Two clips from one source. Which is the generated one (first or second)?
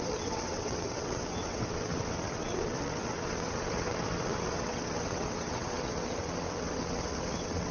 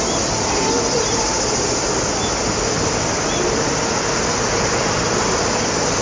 first